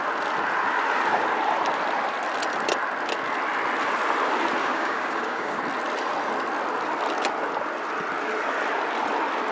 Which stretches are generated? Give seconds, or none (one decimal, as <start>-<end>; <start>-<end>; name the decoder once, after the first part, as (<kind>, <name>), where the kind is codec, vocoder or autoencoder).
4.6-5.6 (codec, DAC)